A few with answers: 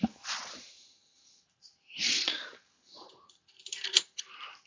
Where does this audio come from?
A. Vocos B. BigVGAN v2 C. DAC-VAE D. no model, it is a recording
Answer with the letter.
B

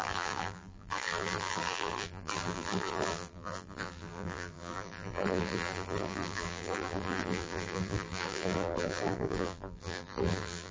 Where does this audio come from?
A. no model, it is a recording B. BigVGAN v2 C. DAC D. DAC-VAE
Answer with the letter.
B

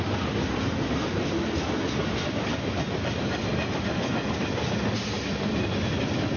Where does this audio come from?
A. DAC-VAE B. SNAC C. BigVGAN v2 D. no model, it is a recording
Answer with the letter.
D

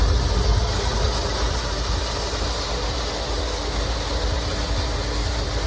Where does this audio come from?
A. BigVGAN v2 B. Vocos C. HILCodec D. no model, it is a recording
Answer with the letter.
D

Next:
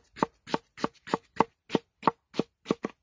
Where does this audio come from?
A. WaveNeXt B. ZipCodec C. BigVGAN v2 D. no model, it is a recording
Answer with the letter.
D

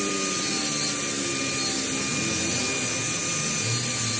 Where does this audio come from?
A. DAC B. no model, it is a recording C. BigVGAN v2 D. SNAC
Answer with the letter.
B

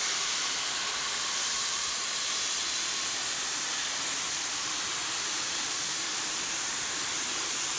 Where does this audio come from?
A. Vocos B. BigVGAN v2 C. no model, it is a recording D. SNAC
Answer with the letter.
B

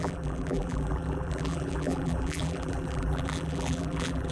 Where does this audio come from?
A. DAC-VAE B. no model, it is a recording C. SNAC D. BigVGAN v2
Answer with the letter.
D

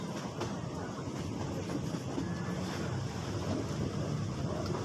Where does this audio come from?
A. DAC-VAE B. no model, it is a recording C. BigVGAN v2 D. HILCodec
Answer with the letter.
B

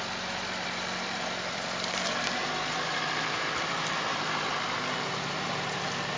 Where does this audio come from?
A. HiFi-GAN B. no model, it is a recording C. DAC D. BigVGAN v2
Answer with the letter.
D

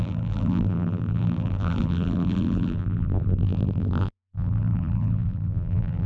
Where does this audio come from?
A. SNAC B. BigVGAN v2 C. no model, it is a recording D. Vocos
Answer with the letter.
B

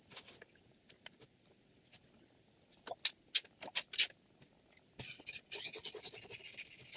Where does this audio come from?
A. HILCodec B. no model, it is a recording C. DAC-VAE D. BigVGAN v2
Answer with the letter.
B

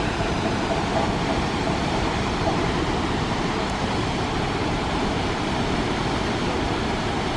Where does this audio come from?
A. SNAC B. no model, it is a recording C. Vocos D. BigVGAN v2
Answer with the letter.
D